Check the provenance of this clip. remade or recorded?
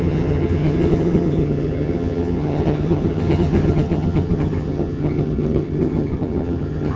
remade